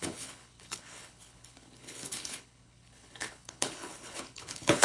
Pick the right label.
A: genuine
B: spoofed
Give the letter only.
B